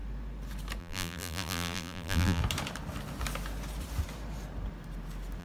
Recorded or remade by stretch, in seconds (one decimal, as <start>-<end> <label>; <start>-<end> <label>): 0.0-0.8 recorded; 0.8-2.4 remade; 2.4-5.4 recorded